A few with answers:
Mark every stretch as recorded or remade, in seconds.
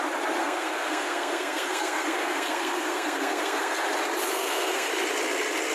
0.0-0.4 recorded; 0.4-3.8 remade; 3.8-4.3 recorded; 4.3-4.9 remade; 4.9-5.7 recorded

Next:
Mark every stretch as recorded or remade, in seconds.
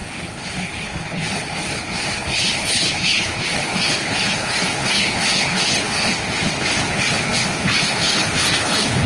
0.0-6.1 remade; 6.1-6.6 recorded; 6.6-9.1 remade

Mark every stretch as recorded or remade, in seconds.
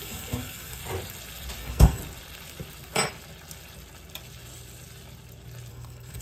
0.0-0.8 remade; 0.8-1.6 recorded; 1.6-2.0 remade; 2.0-5.7 recorded; 5.7-6.2 remade